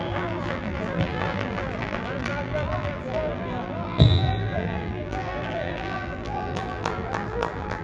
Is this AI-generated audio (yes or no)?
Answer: yes